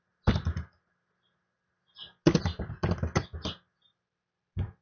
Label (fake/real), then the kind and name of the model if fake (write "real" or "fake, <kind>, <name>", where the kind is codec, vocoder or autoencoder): real